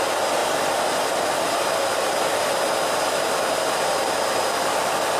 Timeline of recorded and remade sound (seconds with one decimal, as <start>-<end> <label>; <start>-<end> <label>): 0.0-5.2 recorded